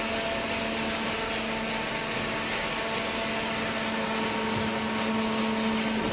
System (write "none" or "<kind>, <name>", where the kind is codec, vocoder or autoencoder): none